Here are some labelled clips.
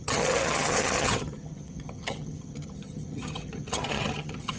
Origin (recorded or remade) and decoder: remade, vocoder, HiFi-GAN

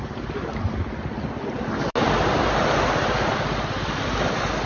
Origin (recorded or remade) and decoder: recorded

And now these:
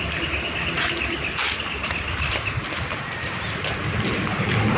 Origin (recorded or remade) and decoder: recorded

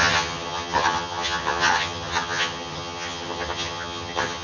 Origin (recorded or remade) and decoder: remade, vocoder, HiFi-GAN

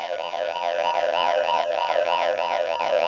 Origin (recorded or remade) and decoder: remade, vocoder, HiFi-GAN